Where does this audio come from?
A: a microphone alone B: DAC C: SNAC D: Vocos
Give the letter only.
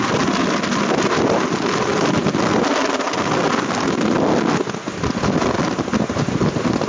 A